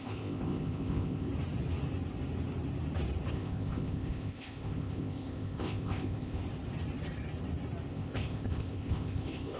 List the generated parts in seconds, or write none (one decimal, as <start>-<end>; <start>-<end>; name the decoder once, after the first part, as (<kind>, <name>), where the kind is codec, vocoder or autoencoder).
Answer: 0.0-1.3 (codec, ZipCodec); 3.3-6.4; 7.9-9.6